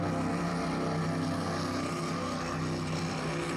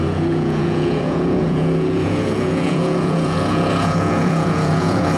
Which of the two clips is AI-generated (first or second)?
second